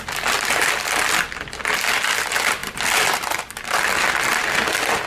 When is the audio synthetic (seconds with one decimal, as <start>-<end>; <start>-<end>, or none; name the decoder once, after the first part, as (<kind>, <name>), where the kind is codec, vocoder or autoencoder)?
none